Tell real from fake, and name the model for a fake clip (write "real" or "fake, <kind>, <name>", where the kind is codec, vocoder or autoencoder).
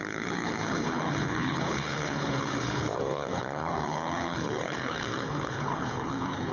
fake, codec, HILCodec